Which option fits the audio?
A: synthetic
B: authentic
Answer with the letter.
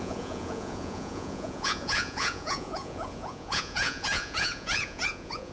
A